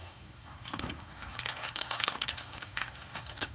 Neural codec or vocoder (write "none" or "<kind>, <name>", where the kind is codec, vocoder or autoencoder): codec, SNAC